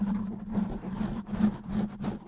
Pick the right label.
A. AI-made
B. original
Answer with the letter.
A